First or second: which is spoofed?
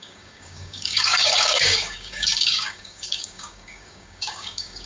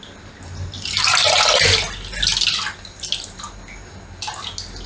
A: first